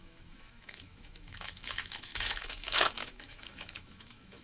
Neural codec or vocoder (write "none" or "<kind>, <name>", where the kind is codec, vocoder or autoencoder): autoencoder, DAC-VAE